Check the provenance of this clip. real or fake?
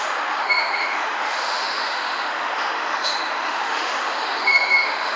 fake